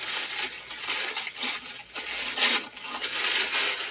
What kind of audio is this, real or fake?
real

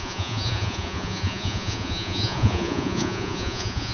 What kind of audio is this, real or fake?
fake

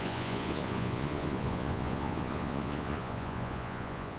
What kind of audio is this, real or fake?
fake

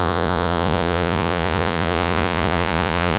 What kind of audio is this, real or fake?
fake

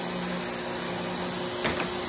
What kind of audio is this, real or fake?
real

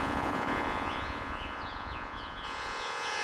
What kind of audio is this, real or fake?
fake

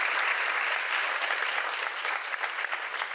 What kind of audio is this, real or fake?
real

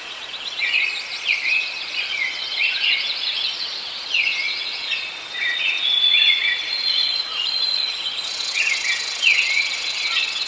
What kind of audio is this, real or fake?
fake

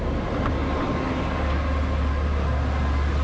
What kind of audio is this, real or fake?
real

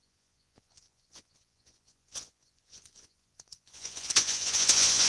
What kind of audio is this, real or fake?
fake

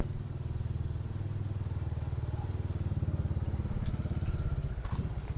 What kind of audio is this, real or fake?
real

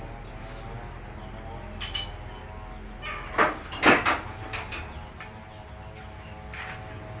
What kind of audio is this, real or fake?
real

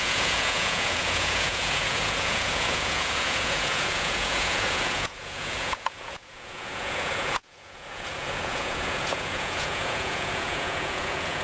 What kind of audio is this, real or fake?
fake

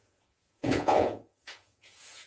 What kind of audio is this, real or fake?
fake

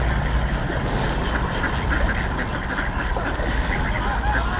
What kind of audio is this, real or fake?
real